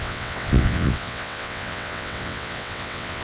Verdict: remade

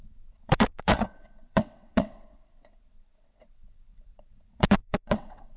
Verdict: remade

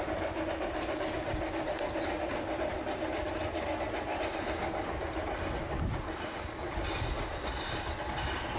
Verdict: recorded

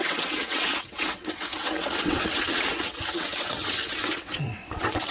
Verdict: remade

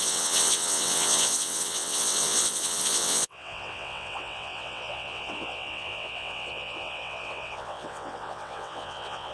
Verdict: remade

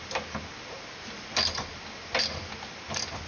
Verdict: recorded